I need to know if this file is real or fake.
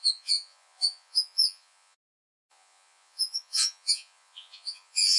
fake